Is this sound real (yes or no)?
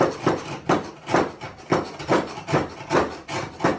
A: yes